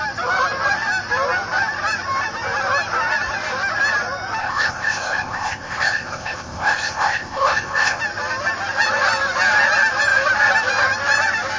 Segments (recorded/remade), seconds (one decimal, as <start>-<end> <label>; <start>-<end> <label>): 0.0-4.4 recorded; 4.4-8.0 remade; 8.0-11.6 recorded